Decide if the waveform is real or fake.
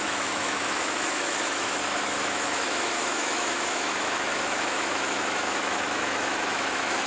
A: fake